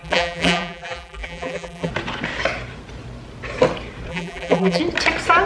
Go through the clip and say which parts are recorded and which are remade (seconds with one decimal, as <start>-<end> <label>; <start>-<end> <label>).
0.0-1.9 remade; 1.9-4.1 recorded; 4.1-4.8 remade; 4.8-5.5 recorded